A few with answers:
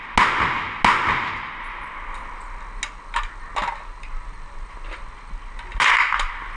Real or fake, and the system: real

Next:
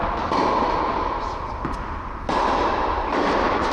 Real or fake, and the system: real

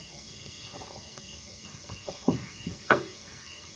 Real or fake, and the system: fake, codec, SNAC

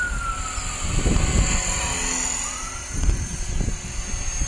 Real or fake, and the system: real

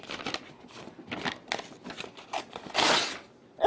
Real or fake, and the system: real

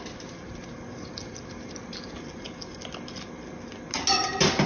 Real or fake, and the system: real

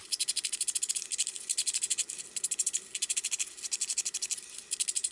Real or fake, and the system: real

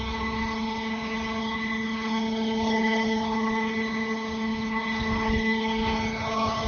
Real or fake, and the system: fake, codec, HILCodec